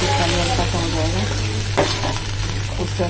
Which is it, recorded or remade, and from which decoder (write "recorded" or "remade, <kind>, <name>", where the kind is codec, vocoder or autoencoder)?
recorded